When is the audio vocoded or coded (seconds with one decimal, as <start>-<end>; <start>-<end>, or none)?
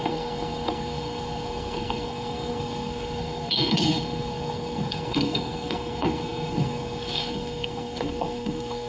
0.0-8.9